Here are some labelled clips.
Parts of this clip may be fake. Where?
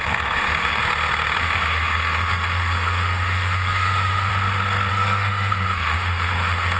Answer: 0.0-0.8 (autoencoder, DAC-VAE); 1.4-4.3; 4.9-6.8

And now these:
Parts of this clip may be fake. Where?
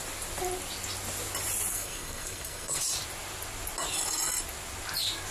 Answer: 1.7-2.8 (codec, SNAC)